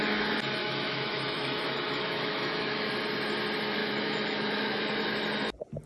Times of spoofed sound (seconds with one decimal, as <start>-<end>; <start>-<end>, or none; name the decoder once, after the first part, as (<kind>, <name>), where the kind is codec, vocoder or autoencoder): 0.6-2.9 (autoencoder, DAC-VAE); 3.8-4.8